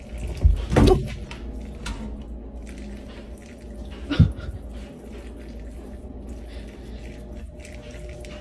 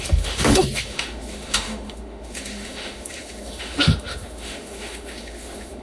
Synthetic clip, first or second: second